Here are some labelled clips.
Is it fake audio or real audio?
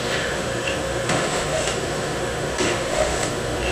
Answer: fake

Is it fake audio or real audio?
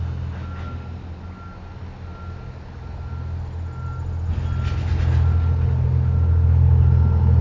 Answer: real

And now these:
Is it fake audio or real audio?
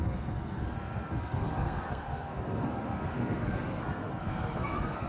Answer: fake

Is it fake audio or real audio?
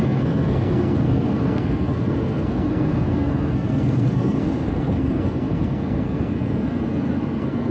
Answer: fake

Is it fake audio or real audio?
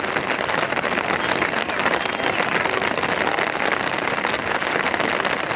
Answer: real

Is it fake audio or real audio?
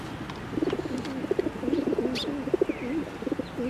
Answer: real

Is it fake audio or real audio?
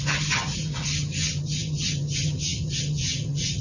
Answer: fake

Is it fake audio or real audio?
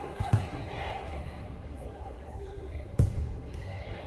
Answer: fake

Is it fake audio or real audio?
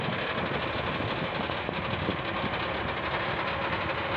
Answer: real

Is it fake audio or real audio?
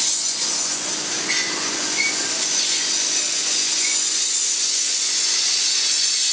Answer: fake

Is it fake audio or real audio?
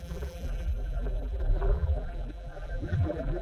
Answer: fake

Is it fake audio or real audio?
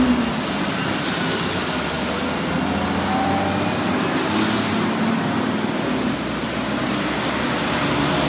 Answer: real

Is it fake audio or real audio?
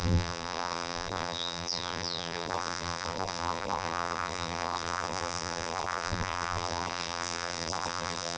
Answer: fake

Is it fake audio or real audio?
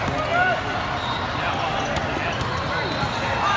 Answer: real